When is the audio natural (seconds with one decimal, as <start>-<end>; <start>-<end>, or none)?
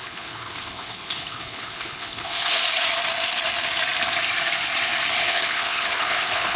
2.6-5.2